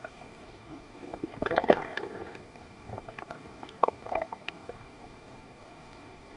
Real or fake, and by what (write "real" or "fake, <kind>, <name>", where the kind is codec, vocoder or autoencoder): fake, codec, DAC